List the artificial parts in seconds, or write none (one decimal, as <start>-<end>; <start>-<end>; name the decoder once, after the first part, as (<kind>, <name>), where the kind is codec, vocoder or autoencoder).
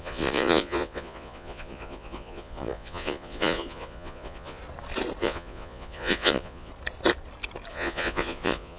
0.0-4.6 (vocoder, Vocos); 5.2-6.7; 7.7-8.8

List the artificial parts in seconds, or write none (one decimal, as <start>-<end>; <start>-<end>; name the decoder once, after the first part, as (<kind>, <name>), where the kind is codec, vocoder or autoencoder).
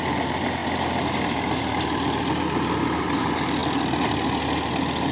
none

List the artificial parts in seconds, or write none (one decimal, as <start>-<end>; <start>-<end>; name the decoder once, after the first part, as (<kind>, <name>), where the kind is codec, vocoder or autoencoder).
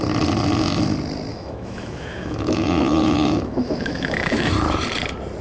1.3-4.5 (autoencoder, DAC-VAE)